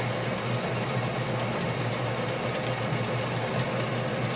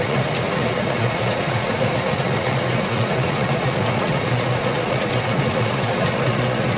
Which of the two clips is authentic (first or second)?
first